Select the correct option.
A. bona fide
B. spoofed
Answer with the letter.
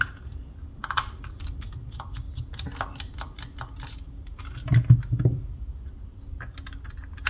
A